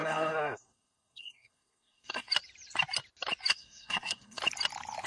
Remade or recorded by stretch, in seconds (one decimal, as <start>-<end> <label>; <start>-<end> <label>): 0.0-2.3 remade; 2.3-3.5 recorded; 3.5-4.4 remade; 4.4-5.1 recorded